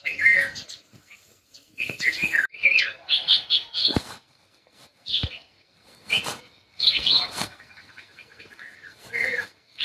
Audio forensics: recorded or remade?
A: remade